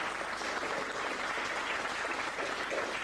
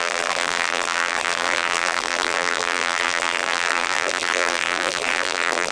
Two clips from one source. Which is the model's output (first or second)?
second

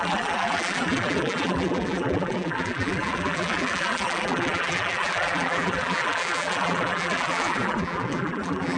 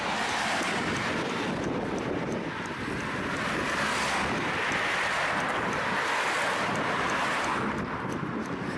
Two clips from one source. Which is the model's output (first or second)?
first